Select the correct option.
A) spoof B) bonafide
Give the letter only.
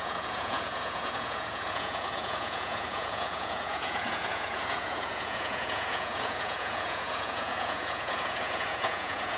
A